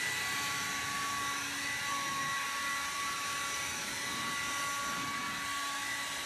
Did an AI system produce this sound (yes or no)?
no